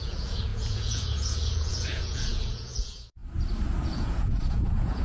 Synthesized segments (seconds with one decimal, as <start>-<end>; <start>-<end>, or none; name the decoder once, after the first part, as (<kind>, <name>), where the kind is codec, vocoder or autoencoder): 0.0-3.2 (vocoder, Vocos); 3.8-5.0